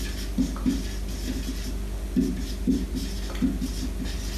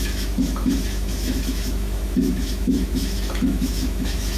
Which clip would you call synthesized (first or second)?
second